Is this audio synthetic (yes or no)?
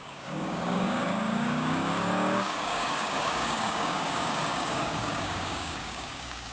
yes